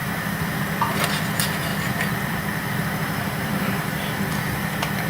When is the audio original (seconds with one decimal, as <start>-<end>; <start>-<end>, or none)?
0.5-1.7; 3.9-5.1

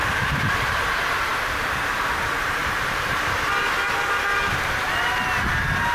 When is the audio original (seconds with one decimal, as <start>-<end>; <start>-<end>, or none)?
0.9-1.3; 2.1-2.6; 3.2-5.9

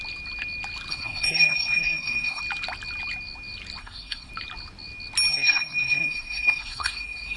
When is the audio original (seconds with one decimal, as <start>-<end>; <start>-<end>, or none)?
0.0-0.9; 2.4-3.8; 4.3-5.3

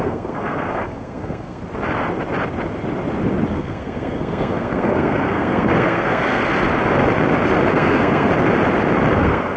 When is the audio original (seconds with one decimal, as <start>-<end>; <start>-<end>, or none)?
1.6-3.5; 6.4-7.7; 8.3-9.1